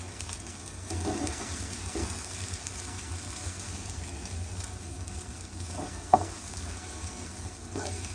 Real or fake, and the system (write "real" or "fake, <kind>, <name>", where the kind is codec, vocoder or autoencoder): fake, codec, SNAC